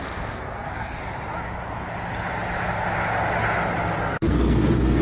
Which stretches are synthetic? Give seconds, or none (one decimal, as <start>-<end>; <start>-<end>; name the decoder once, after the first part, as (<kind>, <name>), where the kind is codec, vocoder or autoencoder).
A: 0.0-1.0 (codec, SNAC); 4.0-5.0